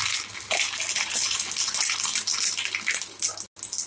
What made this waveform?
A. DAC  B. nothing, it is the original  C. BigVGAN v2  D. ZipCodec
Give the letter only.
B